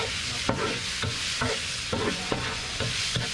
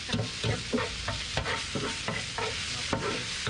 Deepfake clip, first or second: first